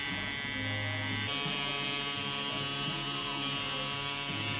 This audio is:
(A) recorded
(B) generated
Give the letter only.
A